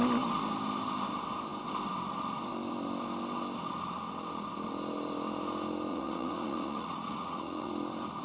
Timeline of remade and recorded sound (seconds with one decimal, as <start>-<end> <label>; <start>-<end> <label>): 0.0-5.9 recorded; 5.9-7.7 remade; 7.7-8.2 recorded